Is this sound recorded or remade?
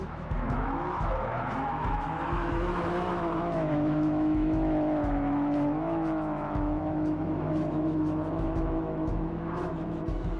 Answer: remade